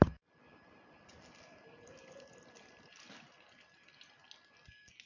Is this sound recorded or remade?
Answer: recorded